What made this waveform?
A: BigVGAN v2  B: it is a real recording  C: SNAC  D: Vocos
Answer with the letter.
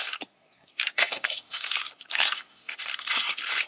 C